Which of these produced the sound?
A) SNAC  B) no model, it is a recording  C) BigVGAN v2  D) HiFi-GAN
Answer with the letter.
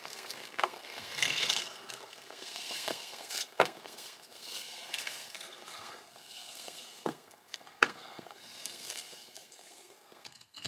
A